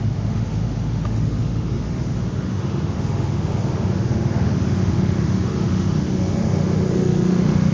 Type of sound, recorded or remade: remade